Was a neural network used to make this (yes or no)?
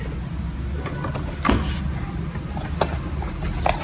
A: no